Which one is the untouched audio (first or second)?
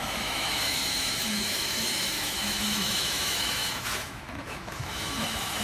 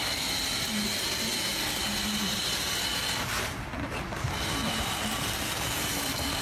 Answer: second